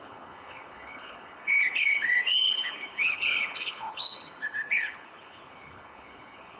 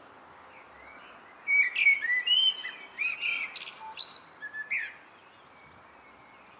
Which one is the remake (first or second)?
first